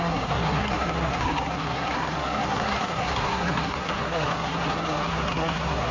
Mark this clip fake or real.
fake